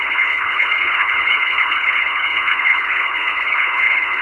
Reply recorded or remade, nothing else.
remade